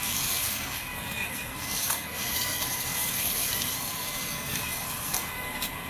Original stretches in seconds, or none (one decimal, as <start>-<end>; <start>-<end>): none